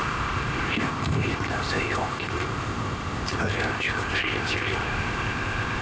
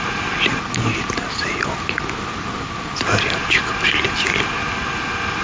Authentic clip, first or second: second